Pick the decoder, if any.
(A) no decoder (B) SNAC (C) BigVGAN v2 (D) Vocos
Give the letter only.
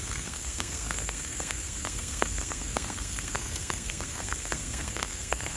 B